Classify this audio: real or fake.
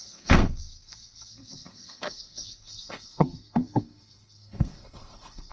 fake